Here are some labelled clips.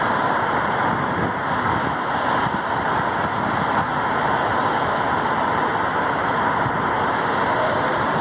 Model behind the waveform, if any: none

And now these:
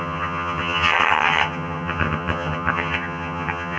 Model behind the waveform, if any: vocoder, HiFi-GAN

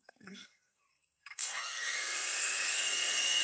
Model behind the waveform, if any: codec, SNAC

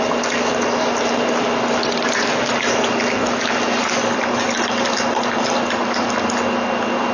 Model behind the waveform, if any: none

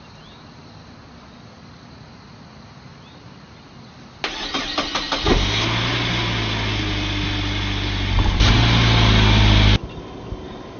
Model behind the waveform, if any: none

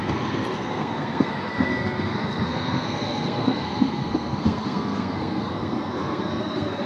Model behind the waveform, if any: codec, SNAC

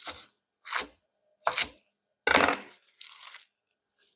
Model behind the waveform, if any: none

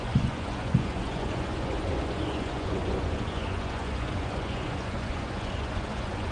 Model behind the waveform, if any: vocoder, Vocos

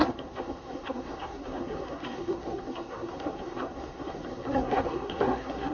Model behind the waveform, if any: codec, SNAC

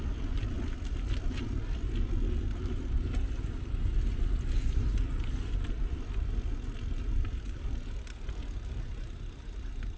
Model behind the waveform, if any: none